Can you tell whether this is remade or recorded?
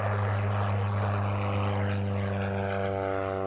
recorded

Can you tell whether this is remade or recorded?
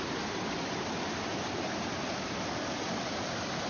recorded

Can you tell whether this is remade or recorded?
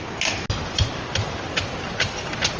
recorded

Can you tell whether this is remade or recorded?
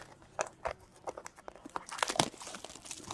recorded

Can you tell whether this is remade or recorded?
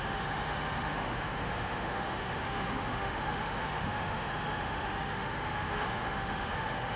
remade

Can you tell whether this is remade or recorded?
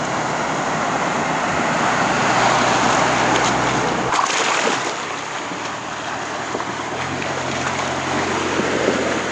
recorded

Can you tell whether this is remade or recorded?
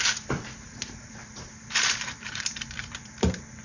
remade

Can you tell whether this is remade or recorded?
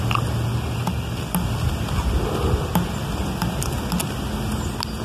recorded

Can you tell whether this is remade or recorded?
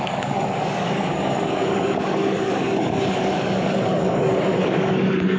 remade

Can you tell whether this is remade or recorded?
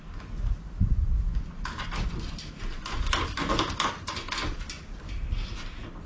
recorded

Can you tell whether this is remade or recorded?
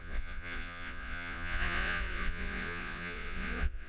remade